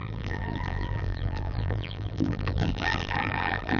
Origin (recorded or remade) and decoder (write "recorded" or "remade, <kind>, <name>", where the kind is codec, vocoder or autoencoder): remade, vocoder, BigVGAN v2